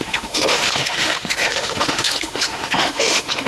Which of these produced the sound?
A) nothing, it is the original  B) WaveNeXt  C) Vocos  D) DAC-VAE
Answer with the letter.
D